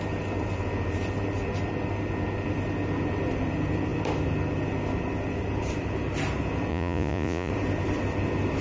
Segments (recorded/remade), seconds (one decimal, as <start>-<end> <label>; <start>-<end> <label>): 0.0-6.7 recorded; 6.7-7.5 remade; 7.5-8.6 recorded